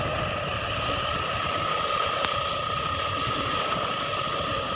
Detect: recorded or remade recorded